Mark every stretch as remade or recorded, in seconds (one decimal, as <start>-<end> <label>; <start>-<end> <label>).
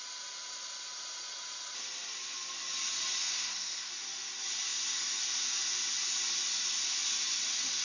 0.0-3.3 recorded; 3.3-3.9 remade; 3.9-7.8 recorded